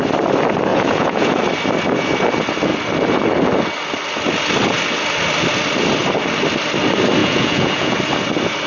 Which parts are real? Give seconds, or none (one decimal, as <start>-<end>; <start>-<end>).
0.0-0.7; 1.4-7.2; 8.0-8.7